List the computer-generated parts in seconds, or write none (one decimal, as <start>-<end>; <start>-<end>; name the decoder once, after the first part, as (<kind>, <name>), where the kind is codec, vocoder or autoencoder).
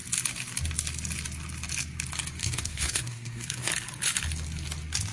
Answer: 2.4-3.7 (codec, SNAC)